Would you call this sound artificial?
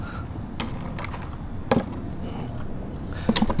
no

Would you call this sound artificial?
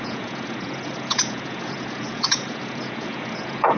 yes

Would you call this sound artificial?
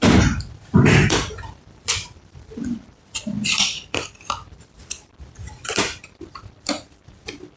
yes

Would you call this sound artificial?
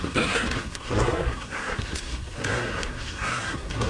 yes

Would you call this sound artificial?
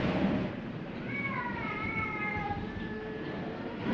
yes